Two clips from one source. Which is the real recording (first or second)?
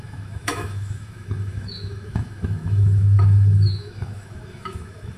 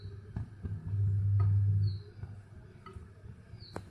second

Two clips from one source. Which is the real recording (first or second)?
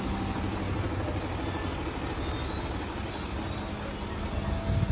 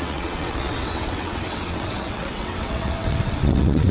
first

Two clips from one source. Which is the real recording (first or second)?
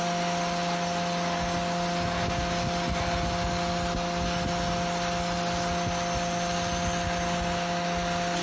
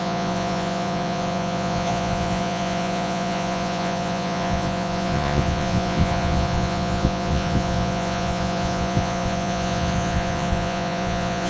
first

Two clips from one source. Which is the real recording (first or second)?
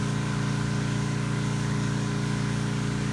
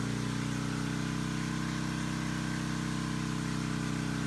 second